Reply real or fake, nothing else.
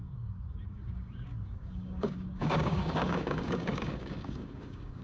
fake